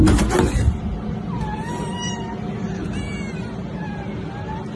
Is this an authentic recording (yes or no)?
yes